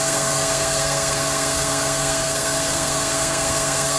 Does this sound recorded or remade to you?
remade